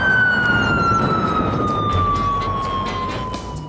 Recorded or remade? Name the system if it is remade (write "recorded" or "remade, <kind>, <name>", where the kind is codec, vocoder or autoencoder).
recorded